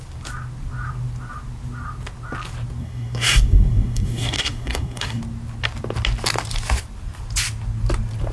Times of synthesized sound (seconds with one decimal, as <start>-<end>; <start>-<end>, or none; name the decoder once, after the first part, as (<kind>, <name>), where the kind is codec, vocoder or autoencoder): 2.8-5.2 (codec, SNAC)